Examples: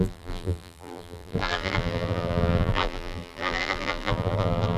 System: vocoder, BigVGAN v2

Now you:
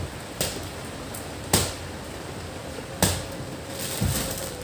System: none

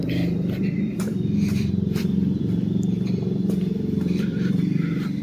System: vocoder, BigVGAN v2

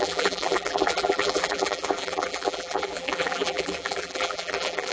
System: vocoder, BigVGAN v2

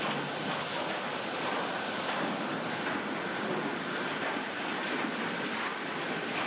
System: none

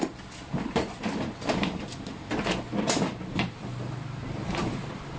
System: vocoder, BigVGAN v2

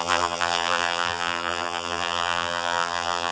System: vocoder, BigVGAN v2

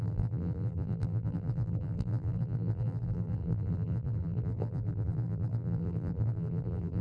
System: vocoder, BigVGAN v2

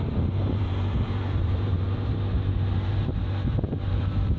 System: vocoder, BigVGAN v2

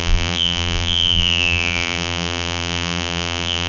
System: vocoder, BigVGAN v2